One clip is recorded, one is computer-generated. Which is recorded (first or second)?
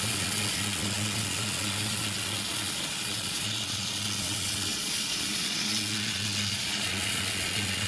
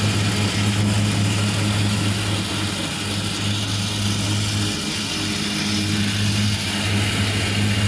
second